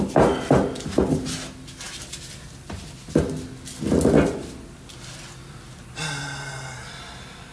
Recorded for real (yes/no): yes